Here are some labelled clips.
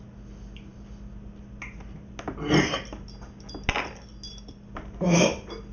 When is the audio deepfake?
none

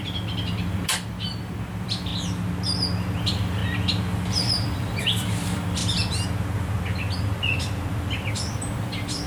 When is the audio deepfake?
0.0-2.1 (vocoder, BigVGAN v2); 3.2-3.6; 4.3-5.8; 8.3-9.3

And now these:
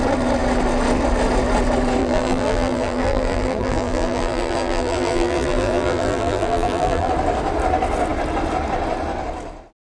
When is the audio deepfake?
2.0-7.1 (vocoder, BigVGAN v2)